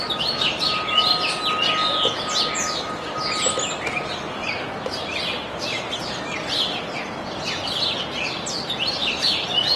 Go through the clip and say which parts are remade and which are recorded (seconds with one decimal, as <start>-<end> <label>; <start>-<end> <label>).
0.0-9.8 recorded

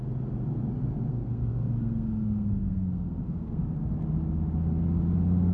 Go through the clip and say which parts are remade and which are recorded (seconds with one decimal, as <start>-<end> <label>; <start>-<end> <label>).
0.0-1.1 recorded; 1.1-3.6 remade; 3.6-5.5 recorded

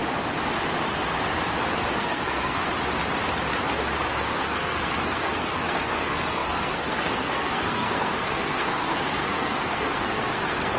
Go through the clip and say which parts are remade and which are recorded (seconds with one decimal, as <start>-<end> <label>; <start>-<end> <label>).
0.0-2.0 recorded; 2.0-2.7 remade; 2.7-4.1 recorded; 4.1-10.8 remade

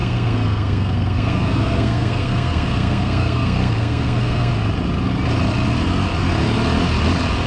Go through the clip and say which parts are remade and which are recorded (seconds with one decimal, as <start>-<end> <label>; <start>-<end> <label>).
0.0-4.5 remade; 4.5-7.5 recorded